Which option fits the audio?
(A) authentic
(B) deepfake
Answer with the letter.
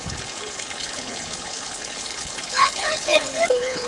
B